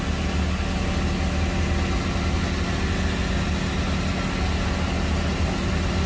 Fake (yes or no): no